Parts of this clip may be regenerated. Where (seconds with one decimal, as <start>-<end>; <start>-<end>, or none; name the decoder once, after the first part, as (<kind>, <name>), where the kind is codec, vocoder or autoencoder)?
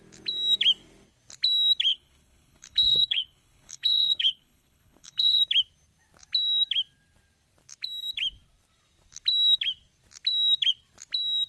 1.9-5.4 (codec, HILCodec)